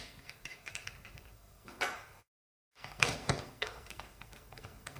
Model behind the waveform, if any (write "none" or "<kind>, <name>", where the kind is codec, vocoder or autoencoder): codec, SNAC